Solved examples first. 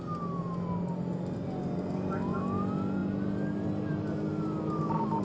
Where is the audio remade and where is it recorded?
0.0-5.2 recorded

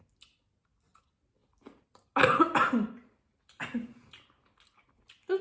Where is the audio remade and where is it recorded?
0.0-5.4 recorded

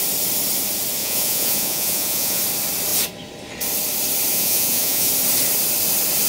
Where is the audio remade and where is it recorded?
0.0-1.0 recorded; 1.0-2.4 remade; 2.4-4.3 recorded; 4.3-5.1 remade; 5.1-6.3 recorded

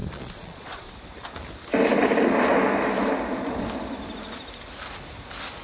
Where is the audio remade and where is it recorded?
0.0-0.9 remade; 0.9-5.6 recorded

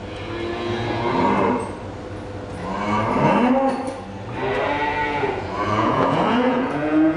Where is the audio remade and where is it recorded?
0.0-4.9 recorded; 4.9-7.2 remade

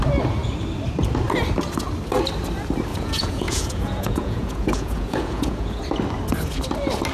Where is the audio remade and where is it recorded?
0.0-2.9 recorded; 2.9-5.8 remade; 5.8-7.1 recorded

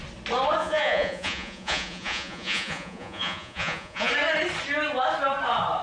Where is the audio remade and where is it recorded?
0.0-0.6 recorded; 0.6-4.1 remade; 4.1-5.8 recorded